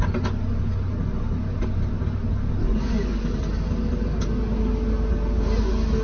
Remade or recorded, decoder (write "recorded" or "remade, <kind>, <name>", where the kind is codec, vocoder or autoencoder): recorded